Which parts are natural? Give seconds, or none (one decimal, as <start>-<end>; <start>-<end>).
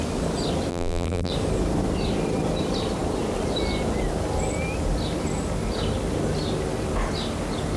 0.0-0.7; 1.3-7.8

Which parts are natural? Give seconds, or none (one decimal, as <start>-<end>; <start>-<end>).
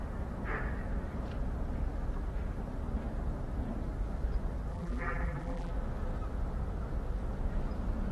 0.0-4.7; 5.7-8.1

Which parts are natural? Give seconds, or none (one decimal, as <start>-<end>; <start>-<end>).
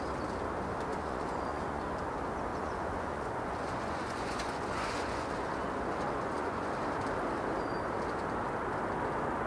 0.0-0.9; 1.8-2.5; 6.7-9.5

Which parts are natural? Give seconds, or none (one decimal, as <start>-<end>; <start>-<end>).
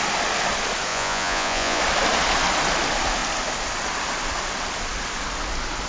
0.0-0.9; 1.8-5.9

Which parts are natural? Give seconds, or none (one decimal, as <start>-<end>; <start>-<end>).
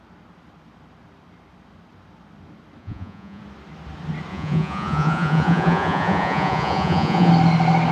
0.0-2.8; 3.4-4.3; 7.3-7.9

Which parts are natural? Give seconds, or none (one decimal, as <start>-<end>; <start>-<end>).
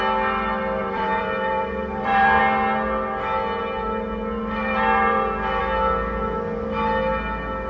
0.0-0.8; 2.4-4.4; 5.6-7.7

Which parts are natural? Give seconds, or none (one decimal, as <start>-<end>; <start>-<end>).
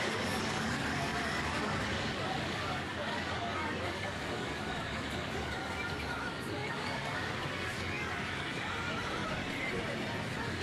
9.4-10.2